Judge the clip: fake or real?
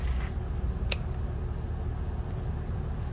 real